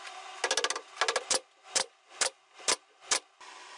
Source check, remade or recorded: recorded